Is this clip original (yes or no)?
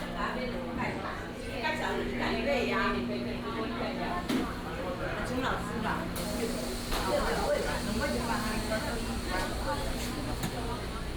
yes